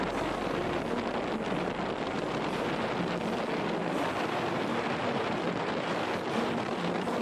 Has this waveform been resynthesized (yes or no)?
no